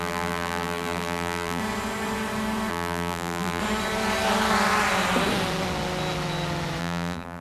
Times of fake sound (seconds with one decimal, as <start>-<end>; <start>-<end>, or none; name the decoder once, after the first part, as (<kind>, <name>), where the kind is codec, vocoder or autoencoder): 0.0-1.6 (vocoder, BigVGAN v2); 2.7-3.6; 6.8-7.4